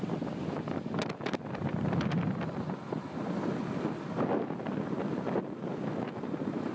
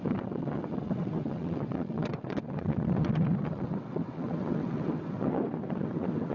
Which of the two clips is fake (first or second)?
second